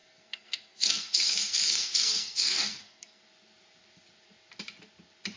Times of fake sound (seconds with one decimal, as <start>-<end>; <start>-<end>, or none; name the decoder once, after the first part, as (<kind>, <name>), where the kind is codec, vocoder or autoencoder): 0.0-3.2 (codec, SNAC)